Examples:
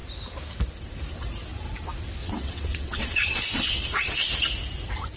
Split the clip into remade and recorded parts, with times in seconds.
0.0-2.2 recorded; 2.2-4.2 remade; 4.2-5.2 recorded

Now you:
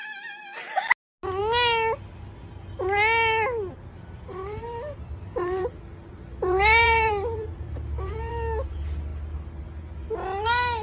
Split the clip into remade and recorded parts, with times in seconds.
0.0-4.3 recorded; 4.3-8.3 remade; 8.3-10.8 recorded

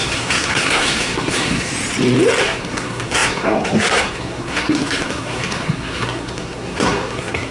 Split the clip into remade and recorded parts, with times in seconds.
0.0-1.7 remade; 1.7-2.4 recorded; 2.4-7.5 remade

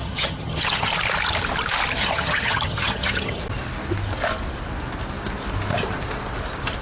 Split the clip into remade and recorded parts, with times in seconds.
0.0-0.9 remade; 0.9-2.0 recorded; 2.0-3.4 remade; 3.4-6.8 recorded

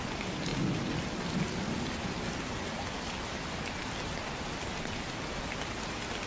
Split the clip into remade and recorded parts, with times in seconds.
0.0-6.3 recorded

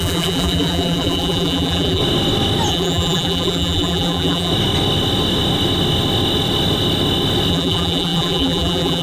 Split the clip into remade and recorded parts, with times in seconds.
0.0-2.0 remade; 2.0-2.7 recorded; 2.7-4.5 remade; 4.5-7.5 recorded; 7.5-9.0 remade